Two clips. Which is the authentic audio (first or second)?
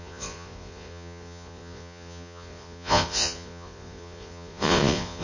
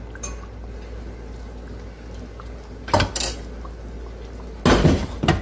second